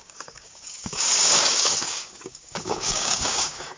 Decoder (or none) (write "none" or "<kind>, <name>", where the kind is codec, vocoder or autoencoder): codec, DAC